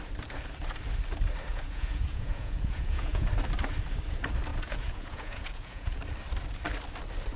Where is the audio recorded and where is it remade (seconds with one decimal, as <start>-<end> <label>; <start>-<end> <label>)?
0.0-1.5 recorded; 1.5-3.3 remade; 3.3-4.5 recorded; 4.5-6.0 remade; 6.0-7.4 recorded